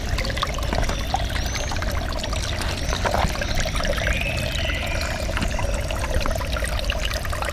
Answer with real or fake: real